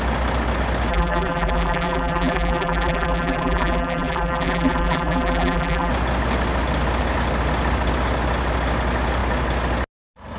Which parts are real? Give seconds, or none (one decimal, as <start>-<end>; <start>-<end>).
0.0-0.9; 5.9-10.4